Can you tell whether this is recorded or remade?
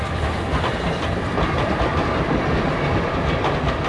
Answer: recorded